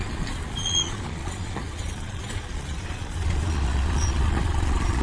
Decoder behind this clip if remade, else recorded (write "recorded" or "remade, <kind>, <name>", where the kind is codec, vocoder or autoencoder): remade, vocoder, Vocos